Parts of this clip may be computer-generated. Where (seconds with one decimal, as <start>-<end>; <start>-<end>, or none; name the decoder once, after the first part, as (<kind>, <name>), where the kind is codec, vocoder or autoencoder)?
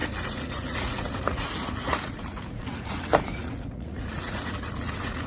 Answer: 0.0-5.3 (vocoder, Vocos)